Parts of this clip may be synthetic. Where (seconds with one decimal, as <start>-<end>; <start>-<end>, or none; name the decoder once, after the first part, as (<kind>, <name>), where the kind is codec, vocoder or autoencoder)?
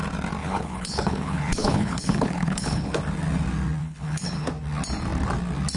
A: 0.4-3.0 (codec, HILCodec); 3.8-4.5